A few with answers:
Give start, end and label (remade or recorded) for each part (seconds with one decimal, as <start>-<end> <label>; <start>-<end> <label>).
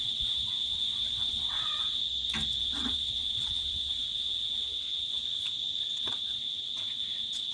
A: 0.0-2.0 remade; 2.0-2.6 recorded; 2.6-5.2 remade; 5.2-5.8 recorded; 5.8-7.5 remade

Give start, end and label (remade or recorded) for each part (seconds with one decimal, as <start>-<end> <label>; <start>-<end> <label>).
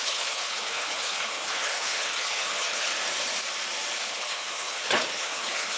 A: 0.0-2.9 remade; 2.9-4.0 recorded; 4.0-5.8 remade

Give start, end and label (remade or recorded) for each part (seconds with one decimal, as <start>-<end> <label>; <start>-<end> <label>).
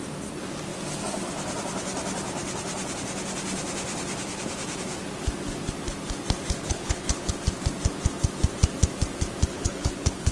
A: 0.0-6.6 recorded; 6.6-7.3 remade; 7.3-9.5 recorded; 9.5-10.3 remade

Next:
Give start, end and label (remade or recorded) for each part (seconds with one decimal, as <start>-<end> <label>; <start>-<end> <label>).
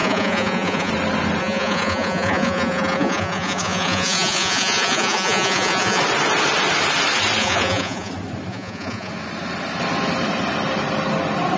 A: 0.0-0.9 remade; 0.9-1.4 recorded; 1.4-6.0 remade; 6.0-7.4 recorded; 7.4-8.1 remade; 8.1-8.5 recorded; 8.5-9.1 remade; 9.1-11.6 recorded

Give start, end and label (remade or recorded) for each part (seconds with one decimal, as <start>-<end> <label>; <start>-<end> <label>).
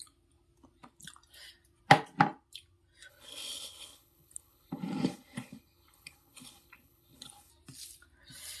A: 0.0-3.1 recorded; 3.1-7.5 remade; 7.5-8.6 recorded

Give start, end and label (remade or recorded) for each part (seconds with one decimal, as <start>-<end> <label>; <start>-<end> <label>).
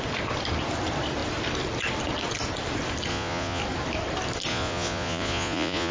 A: 0.0-3.1 recorded; 3.1-3.6 remade; 3.6-4.5 recorded; 4.5-5.9 remade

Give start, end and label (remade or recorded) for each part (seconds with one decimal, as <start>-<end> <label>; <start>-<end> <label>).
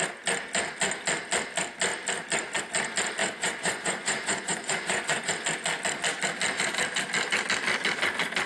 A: 0.0-3.2 recorded; 3.2-5.3 remade; 5.3-8.5 recorded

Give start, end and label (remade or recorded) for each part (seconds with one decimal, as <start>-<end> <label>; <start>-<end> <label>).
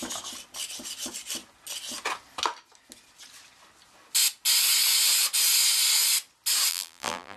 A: 0.0-6.7 recorded; 6.7-7.4 remade